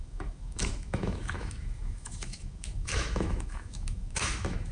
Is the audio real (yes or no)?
no